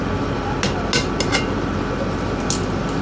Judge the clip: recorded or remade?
recorded